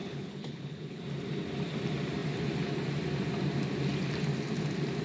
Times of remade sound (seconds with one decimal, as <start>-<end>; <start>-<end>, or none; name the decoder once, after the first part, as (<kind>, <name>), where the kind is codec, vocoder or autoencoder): 0.0-1.0 (codec, HILCodec)